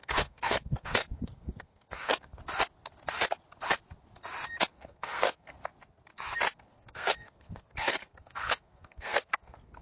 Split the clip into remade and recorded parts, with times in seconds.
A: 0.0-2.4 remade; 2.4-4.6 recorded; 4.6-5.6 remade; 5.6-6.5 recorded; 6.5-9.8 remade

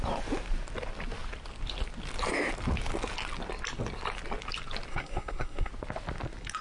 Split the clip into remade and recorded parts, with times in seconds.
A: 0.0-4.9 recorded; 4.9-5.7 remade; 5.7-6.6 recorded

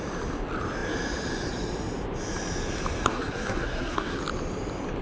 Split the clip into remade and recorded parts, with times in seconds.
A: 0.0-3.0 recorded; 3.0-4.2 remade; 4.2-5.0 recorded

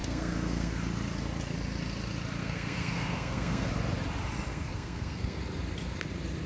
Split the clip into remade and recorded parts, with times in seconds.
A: 0.0-0.7 remade; 0.7-2.4 recorded; 2.4-3.7 remade; 3.7-4.5 recorded; 4.5-5.4 remade; 5.4-6.5 recorded

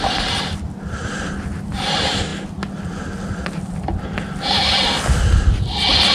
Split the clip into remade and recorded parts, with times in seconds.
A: 0.0-6.1 recorded

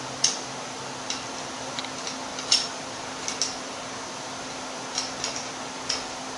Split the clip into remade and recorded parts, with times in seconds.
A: 0.0-6.4 recorded

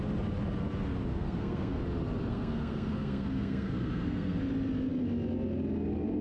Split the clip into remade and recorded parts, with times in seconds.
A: 0.0-1.1 recorded; 1.1-1.8 remade; 1.8-2.3 recorded; 2.3-4.4 remade; 4.4-6.2 recorded